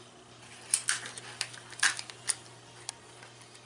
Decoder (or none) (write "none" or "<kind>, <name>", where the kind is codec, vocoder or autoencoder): none